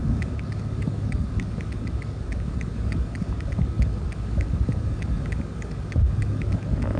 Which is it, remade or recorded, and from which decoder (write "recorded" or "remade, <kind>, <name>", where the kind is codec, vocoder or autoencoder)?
remade, codec, DAC